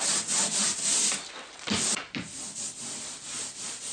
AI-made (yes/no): yes